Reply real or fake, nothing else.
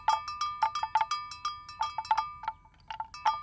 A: real